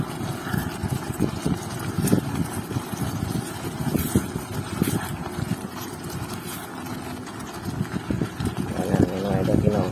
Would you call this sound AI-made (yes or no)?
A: no